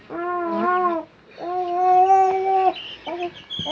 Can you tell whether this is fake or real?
real